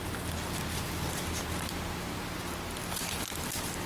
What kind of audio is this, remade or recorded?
recorded